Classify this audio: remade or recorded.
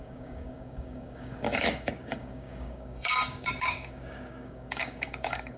remade